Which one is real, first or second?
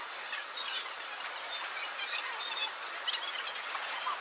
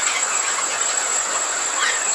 first